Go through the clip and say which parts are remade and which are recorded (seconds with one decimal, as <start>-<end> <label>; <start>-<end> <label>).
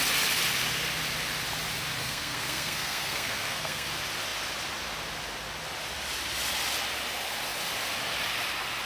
0.0-2.0 recorded; 2.0-3.9 remade; 3.9-8.9 recorded